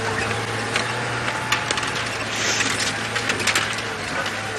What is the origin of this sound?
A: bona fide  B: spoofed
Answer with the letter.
A